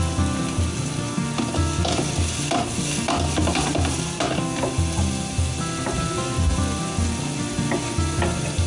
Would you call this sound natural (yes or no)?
yes